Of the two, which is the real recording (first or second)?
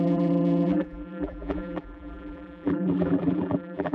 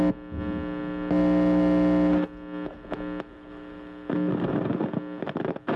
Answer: second